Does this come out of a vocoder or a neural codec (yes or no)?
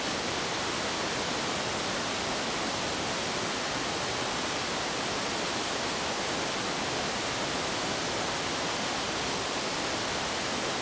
no